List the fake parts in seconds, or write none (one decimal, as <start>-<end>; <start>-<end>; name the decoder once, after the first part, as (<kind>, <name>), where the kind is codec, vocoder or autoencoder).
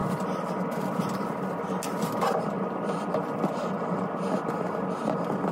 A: 0.0-5.5 (vocoder, BigVGAN v2)